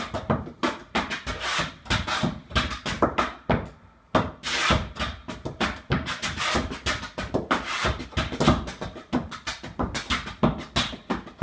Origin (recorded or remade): recorded